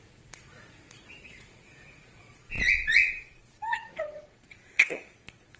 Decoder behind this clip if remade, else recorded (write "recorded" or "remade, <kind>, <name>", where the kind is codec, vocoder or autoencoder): remade, vocoder, Vocos